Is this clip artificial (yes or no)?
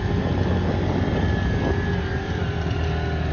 no